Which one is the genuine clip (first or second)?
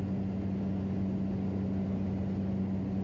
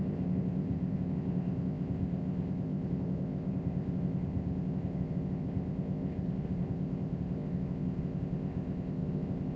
first